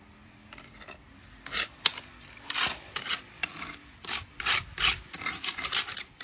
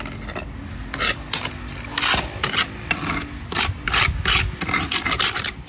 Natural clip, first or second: second